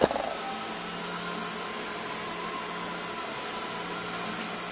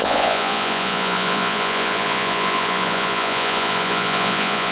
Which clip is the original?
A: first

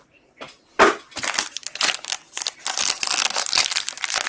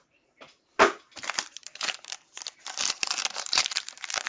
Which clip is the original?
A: first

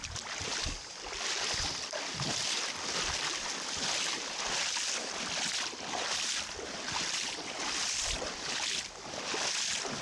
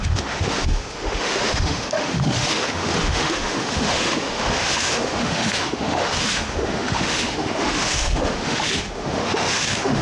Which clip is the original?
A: first